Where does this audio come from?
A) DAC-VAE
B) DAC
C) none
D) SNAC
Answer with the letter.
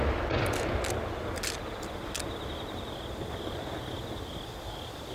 C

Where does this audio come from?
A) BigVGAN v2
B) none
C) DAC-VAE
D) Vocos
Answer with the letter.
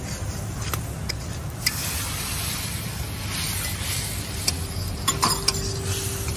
B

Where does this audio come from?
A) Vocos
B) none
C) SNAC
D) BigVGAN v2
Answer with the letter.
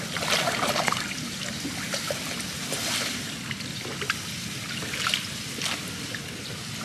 D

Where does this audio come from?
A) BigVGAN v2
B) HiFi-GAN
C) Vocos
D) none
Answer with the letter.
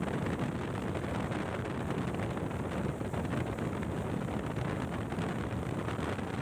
D